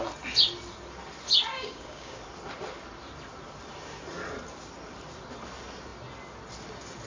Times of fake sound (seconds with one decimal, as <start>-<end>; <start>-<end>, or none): 1.5-2.2